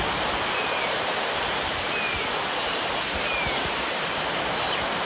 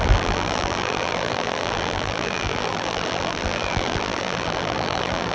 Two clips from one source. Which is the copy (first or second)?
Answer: second